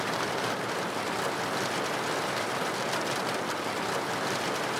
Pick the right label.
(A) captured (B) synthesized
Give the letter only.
A